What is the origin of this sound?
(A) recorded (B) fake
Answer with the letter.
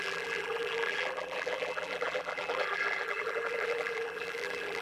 B